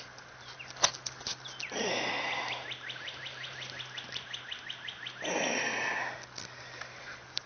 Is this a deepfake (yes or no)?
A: no